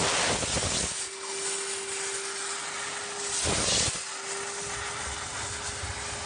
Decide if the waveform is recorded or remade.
recorded